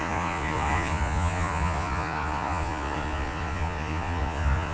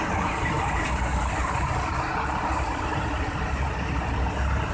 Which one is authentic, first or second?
second